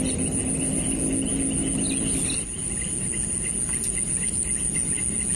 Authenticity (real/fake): real